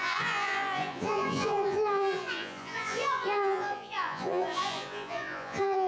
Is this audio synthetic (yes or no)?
yes